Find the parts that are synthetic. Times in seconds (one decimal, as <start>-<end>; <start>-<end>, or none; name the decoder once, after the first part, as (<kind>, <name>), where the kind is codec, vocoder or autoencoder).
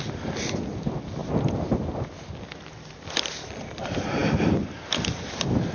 0.0-1.2 (vocoder, BigVGAN v2); 2.3-5.7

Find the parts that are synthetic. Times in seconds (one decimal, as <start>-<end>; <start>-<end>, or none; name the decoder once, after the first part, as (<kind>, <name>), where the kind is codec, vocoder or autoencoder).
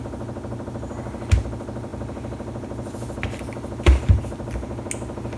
none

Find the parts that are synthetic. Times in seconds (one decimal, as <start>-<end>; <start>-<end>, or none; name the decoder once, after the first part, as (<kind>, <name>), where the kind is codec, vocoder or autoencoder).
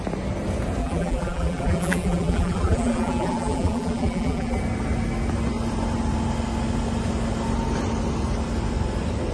0.8-4.6 (vocoder, BigVGAN v2)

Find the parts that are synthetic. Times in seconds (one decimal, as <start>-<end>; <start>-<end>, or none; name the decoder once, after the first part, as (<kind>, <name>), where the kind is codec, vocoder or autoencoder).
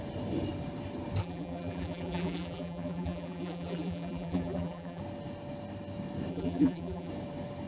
1.2-5.0 (vocoder, BigVGAN v2); 6.3-7.1